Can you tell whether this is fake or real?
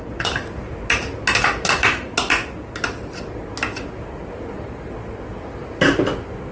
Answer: real